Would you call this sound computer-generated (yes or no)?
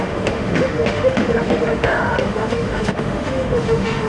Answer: yes